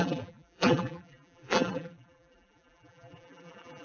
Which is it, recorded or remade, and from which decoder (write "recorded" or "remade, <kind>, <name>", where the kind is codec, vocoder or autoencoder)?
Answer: remade, vocoder, BigVGAN v2